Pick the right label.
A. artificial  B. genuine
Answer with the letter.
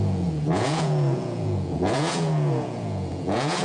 A